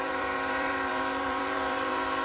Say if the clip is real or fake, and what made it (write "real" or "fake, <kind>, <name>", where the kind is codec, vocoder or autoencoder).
fake, vocoder, BigVGAN v2